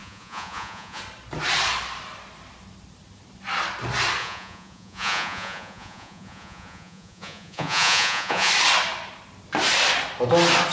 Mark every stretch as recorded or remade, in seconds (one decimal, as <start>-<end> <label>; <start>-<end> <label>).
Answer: 0.0-1.0 remade; 1.0-4.2 recorded; 4.2-8.5 remade; 8.5-10.7 recorded